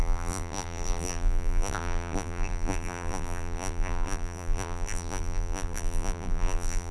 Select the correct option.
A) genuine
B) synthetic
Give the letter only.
B